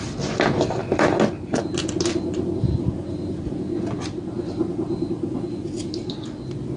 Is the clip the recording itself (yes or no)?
yes